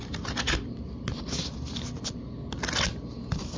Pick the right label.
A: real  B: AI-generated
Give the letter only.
A